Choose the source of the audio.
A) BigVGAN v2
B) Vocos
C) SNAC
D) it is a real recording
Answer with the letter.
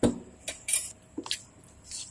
D